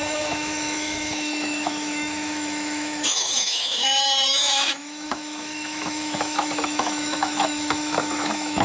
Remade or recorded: remade